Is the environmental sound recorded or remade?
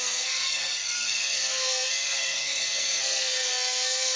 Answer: remade